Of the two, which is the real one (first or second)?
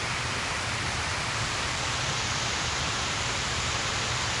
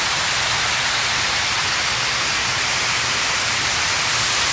second